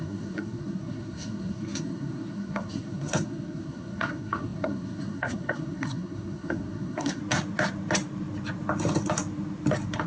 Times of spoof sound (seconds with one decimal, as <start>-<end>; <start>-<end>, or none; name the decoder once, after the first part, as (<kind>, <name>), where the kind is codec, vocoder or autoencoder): 0.0-7.2 (codec, SNAC)